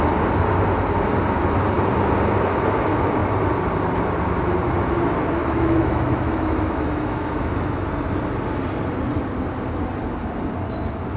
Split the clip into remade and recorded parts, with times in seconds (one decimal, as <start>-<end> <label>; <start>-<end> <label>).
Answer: 0.0-5.4 recorded; 5.4-7.9 remade; 7.9-11.2 recorded